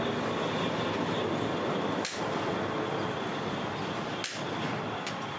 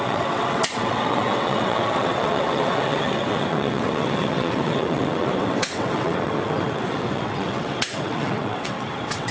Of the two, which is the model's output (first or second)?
second